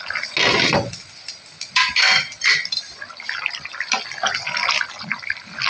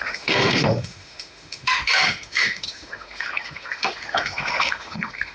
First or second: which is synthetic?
second